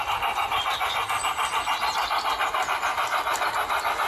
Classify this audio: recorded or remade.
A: recorded